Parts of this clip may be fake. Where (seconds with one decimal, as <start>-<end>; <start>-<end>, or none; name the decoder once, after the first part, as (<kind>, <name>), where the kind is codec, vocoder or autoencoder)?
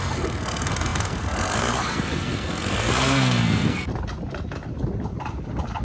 0.0-3.9 (codec, SNAC)